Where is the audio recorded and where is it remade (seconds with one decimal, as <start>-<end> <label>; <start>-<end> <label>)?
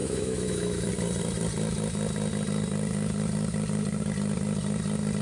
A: 0.0-0.9 remade; 0.9-5.2 recorded